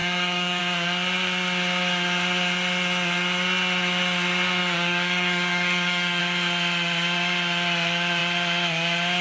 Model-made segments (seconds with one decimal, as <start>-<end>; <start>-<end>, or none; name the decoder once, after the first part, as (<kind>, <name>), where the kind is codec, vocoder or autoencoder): 0.0-0.6 (codec, DAC); 4.6-6.2